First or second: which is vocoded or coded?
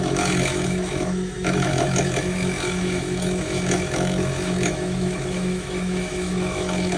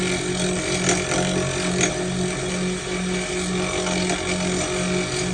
first